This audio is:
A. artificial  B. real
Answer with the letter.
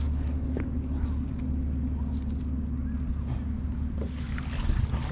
B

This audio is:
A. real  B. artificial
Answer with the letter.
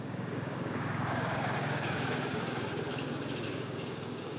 B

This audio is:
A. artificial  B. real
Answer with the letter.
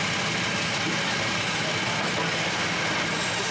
B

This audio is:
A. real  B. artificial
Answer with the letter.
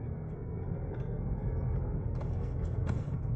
B